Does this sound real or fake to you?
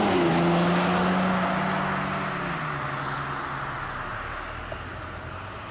real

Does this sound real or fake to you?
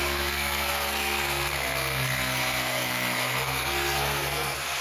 fake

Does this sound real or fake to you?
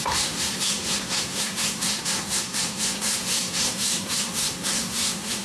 fake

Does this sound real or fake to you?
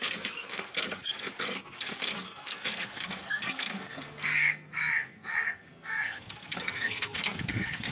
fake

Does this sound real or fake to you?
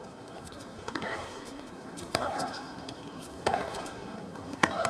fake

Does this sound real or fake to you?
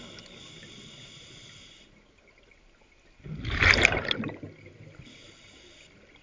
real